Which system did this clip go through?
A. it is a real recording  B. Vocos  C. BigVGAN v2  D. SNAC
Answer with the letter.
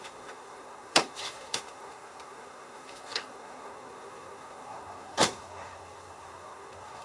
D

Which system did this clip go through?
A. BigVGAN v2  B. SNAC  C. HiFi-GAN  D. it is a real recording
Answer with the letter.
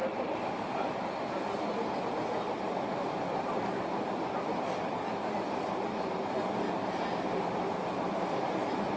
D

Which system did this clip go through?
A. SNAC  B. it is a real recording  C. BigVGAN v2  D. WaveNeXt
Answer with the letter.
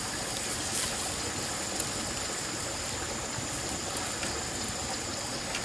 B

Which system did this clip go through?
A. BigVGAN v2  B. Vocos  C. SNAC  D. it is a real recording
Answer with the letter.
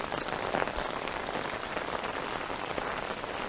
D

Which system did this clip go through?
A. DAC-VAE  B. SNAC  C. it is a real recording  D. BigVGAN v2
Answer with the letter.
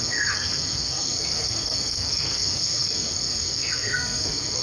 B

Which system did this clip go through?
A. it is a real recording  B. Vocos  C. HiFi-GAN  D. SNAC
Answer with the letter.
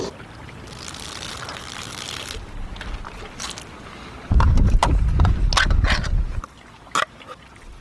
A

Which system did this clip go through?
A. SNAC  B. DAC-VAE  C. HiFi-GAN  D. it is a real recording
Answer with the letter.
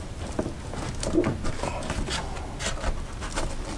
D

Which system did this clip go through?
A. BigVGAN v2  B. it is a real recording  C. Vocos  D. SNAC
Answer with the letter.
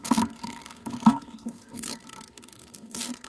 D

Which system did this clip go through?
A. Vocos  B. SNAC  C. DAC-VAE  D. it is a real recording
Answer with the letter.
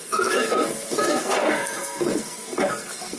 B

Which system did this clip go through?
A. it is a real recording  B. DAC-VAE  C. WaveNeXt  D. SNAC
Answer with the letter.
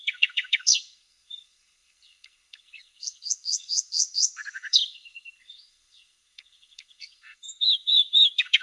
D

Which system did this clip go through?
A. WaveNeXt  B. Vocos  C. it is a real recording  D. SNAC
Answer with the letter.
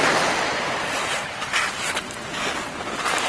C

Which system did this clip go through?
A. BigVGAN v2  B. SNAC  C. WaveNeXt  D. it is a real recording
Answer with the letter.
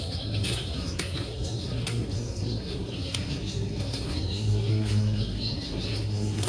B